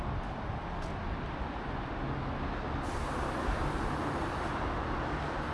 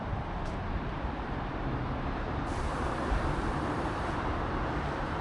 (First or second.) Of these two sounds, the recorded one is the first